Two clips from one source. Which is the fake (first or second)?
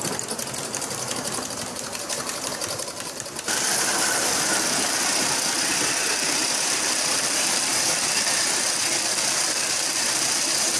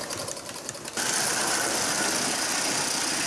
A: first